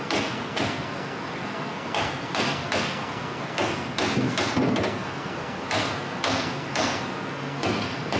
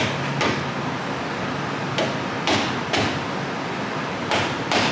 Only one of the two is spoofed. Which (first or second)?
first